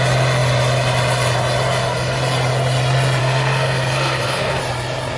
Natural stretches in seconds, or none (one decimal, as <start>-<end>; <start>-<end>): 0.0-3.2; 4.6-5.2